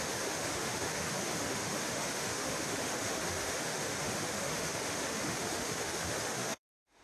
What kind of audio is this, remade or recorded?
remade